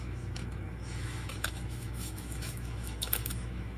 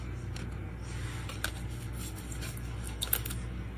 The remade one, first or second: first